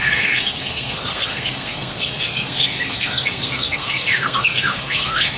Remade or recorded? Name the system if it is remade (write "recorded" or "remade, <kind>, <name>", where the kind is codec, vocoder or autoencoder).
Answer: remade, codec, SNAC